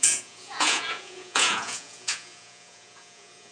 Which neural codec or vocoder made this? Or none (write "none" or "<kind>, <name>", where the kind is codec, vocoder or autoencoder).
vocoder, Vocos